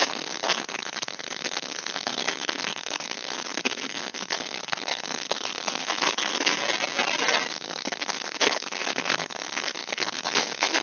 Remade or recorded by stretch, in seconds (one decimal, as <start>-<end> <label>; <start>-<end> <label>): 0.0-6.6 remade; 6.6-7.5 recorded; 7.5-10.8 remade